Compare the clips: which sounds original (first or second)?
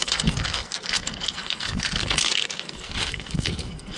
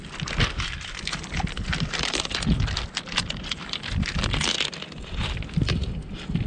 second